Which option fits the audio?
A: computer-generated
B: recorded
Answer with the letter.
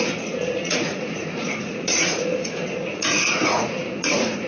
A